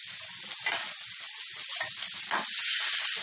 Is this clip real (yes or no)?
yes